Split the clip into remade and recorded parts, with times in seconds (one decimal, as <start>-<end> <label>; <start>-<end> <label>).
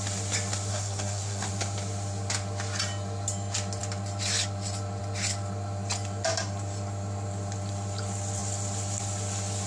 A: 0.0-0.7 recorded; 0.7-1.5 remade; 1.5-9.7 recorded